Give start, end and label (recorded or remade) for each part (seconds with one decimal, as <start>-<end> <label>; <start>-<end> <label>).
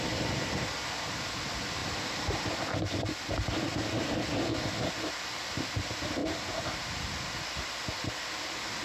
0.0-8.8 recorded